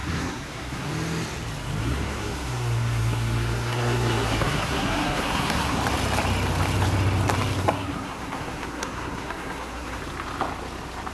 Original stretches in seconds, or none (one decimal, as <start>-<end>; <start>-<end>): 0.9-1.8; 5.8-7.6; 10.0-11.1